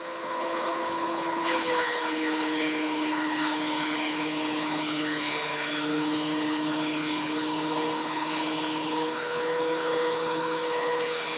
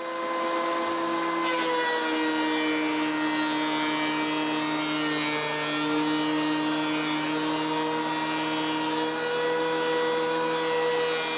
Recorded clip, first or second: second